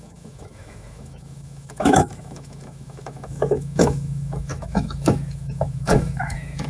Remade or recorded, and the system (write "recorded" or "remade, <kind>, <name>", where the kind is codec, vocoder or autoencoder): remade, autoencoder, DAC-VAE